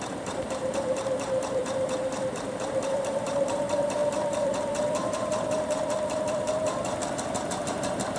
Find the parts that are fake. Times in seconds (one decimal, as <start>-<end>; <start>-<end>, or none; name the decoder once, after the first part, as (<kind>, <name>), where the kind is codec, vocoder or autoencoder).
0.0-8.2 (vocoder, BigVGAN v2)